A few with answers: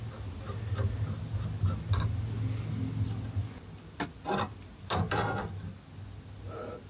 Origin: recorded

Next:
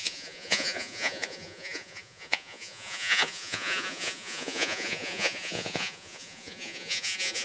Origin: remade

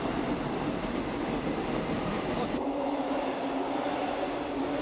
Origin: recorded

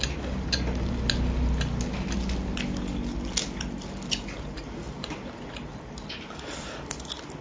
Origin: recorded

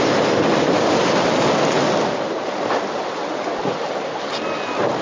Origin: recorded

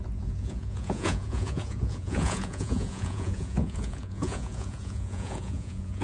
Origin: remade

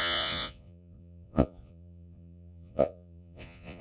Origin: remade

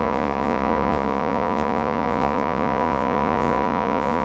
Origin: remade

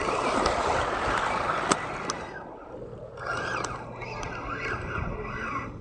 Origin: recorded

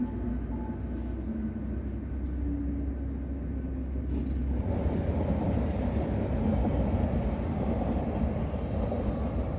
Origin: recorded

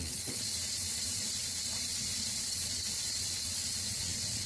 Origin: remade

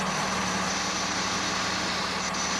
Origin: recorded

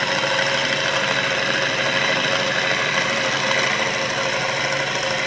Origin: recorded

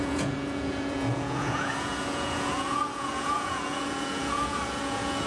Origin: remade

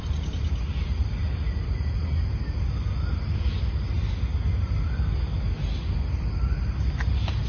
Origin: recorded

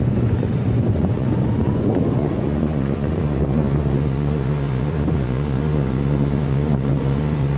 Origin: remade